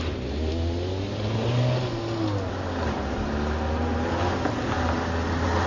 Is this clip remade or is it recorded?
recorded